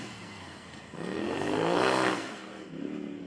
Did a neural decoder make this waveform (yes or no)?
yes